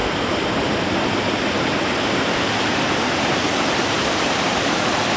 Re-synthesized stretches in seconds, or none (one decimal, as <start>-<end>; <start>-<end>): 3.1-5.2